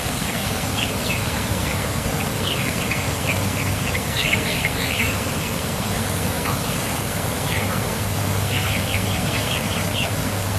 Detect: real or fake fake